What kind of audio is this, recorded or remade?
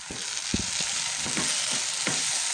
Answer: recorded